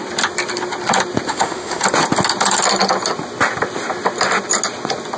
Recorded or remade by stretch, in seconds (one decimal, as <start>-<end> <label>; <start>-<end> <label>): 0.0-1.3 recorded; 1.3-1.8 remade; 1.8-5.2 recorded